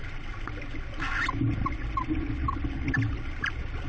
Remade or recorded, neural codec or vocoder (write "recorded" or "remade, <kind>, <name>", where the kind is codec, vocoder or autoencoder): recorded